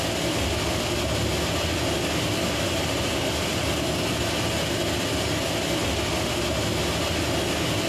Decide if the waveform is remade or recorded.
recorded